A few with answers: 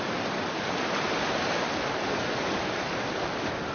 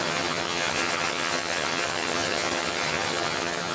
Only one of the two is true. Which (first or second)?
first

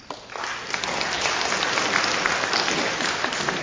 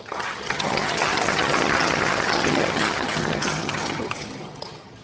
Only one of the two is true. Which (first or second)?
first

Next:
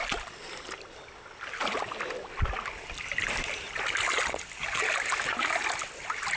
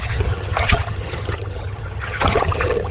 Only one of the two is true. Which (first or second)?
first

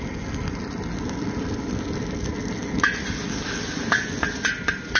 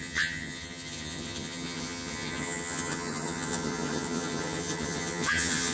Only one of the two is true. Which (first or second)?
first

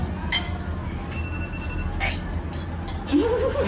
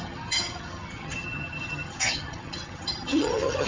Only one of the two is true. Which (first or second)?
first